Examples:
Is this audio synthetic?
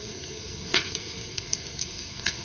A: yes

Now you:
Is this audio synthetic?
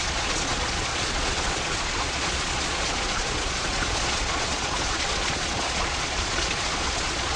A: yes